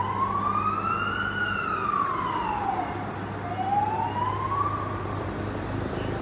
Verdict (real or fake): real